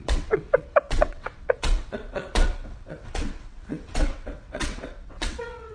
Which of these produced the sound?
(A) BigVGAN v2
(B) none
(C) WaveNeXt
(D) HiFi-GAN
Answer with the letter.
C